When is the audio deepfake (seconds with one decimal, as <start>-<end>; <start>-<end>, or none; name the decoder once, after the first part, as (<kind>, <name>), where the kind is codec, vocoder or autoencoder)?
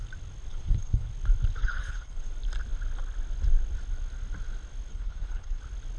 0.5-1.1 (codec, HILCodec); 1.6-2.3; 4.9-5.6